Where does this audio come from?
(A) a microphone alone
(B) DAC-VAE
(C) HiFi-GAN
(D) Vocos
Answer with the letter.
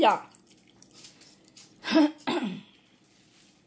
A